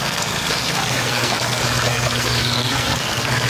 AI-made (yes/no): yes